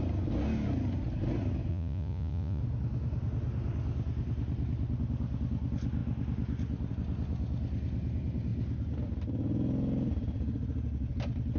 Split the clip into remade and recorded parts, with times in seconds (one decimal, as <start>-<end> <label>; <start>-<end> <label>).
0.0-1.7 recorded; 1.7-2.6 remade; 2.6-11.6 recorded